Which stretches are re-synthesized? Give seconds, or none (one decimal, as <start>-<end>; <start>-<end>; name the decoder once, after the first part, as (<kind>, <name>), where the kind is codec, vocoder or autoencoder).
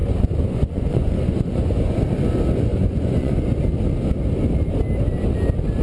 0.0-2.0 (vocoder, Vocos); 2.7-3.4